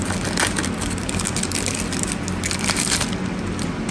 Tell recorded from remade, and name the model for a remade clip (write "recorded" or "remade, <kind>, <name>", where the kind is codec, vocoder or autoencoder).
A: recorded